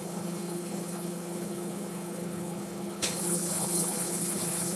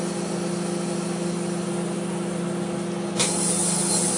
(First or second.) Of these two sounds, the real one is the second